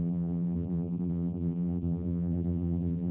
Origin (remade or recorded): remade